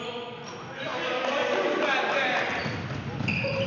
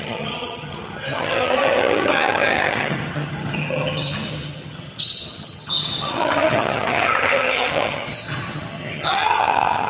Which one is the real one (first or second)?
first